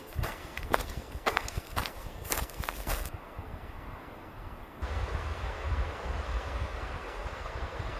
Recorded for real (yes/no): no